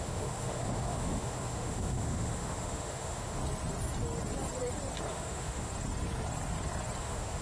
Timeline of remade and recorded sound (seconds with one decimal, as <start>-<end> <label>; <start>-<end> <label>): 0.0-3.4 remade; 3.4-5.1 recorded; 5.1-5.7 remade; 5.7-7.0 recorded; 7.0-7.4 remade